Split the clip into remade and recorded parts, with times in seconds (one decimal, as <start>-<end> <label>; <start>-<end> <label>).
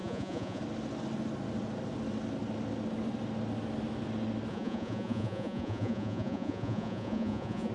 0.0-0.6 remade; 0.6-4.5 recorded; 4.5-7.7 remade